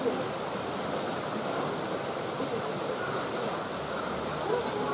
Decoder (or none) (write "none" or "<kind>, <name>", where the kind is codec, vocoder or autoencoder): none